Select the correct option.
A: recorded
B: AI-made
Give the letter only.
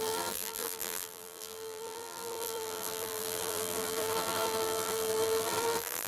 B